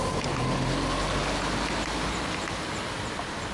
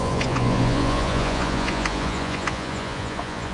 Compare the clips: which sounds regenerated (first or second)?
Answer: second